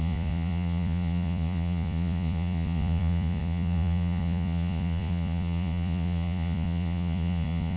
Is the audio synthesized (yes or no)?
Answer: yes